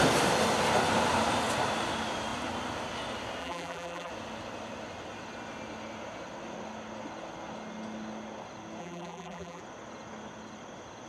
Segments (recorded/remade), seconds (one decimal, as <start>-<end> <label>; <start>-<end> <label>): 0.0-3.4 recorded; 3.4-4.1 remade; 4.1-8.8 recorded; 8.8-9.6 remade; 9.6-11.1 recorded